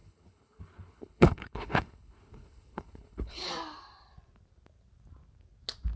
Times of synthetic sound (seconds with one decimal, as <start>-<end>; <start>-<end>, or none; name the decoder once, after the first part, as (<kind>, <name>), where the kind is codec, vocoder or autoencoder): 0.0-3.5 (codec, HILCodec)